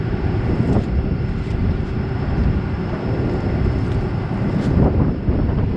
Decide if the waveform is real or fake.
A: fake